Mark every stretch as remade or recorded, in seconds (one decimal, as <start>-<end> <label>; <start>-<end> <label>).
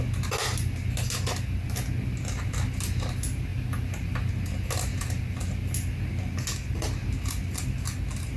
0.0-8.4 recorded